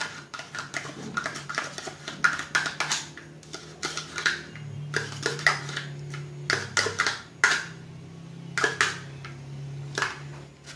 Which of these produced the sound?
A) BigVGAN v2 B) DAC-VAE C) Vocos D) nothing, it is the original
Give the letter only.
D